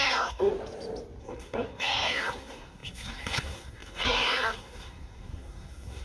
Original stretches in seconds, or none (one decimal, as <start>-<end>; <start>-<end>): 0.5-1.2